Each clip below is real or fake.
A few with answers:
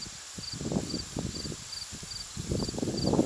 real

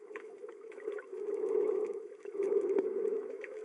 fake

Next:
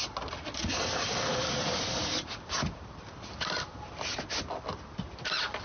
real